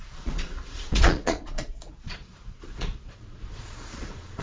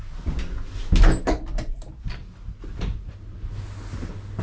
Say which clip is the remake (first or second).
first